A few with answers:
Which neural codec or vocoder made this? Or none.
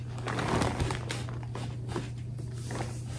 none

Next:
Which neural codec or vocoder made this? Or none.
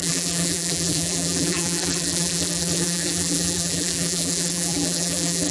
vocoder, BigVGAN v2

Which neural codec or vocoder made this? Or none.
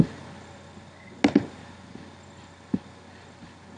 none